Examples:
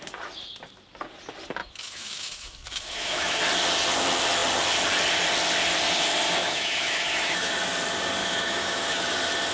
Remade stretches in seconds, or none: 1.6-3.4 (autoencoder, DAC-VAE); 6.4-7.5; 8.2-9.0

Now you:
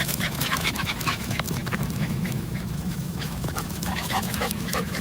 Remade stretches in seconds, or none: 0.0-5.0 (autoencoder, DAC-VAE)